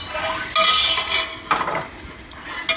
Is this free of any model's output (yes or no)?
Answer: yes